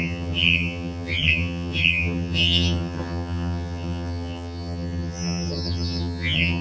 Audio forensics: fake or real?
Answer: fake